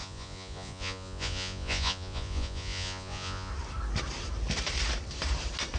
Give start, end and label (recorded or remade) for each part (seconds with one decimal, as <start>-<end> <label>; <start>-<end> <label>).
0.0-3.5 remade; 3.5-5.8 recorded

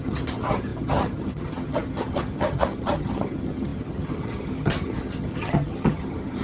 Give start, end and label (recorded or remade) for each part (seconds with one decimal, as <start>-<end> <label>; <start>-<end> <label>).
0.0-6.4 remade

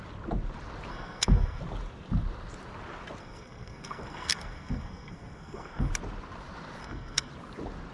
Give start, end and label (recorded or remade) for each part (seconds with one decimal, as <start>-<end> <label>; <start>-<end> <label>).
0.0-0.9 recorded; 0.9-1.6 remade; 1.6-3.2 recorded; 3.2-5.9 remade; 5.9-6.8 recorded; 6.8-7.3 remade; 7.3-7.9 recorded

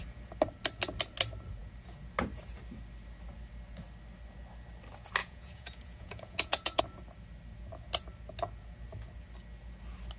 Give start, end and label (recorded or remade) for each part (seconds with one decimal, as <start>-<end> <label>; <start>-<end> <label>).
0.0-5.2 recorded; 5.2-6.8 remade; 6.8-10.2 recorded